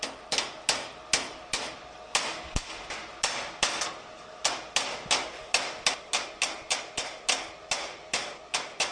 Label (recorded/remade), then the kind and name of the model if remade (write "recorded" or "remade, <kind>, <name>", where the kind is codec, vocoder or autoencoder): recorded